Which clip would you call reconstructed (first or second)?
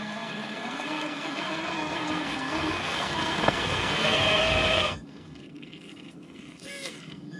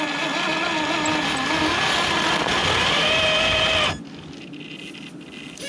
first